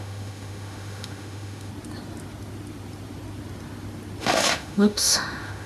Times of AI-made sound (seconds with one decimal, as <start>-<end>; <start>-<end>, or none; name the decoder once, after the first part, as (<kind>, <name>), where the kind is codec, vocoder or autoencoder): 0.0-1.7 (autoencoder, DAC-VAE); 4.2-5.7